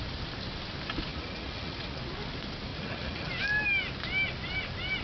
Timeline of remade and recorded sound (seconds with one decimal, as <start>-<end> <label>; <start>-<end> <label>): 0.0-1.1 recorded; 1.1-2.0 remade; 2.0-2.7 recorded; 2.7-3.3 remade; 3.3-5.0 recorded